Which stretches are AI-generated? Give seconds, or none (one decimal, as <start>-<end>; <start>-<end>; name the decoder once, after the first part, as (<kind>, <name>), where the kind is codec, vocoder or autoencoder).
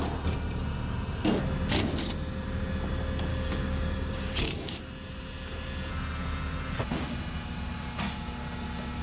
3.3-4.7 (codec, DAC)